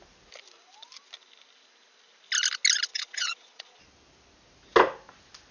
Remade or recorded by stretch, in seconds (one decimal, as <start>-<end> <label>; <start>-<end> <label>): 0.0-2.9 recorded; 2.9-3.8 remade; 3.8-5.5 recorded